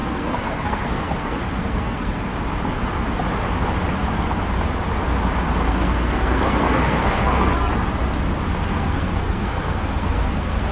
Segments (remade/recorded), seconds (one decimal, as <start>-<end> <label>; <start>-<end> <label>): 0.0-2.3 remade; 2.3-5.7 recorded; 5.7-7.7 remade; 7.7-8.6 recorded; 8.6-10.7 remade